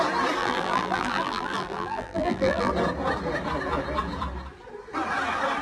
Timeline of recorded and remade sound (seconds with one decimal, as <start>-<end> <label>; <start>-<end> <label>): 0.0-0.4 recorded; 0.4-2.7 remade; 2.7-5.6 recorded